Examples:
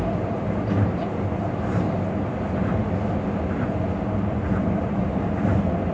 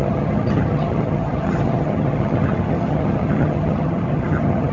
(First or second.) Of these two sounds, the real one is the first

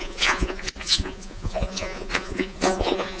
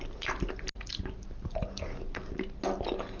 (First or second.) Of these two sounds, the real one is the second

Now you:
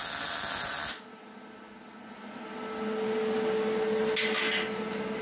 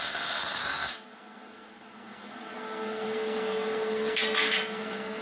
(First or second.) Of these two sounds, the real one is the first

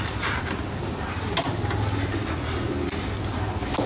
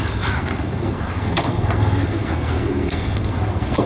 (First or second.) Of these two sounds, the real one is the first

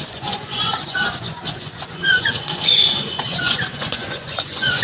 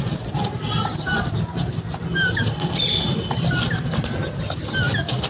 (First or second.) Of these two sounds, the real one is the second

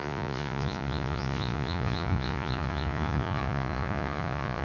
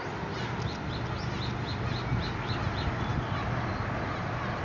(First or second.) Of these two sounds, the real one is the second